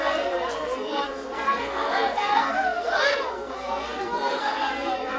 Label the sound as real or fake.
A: fake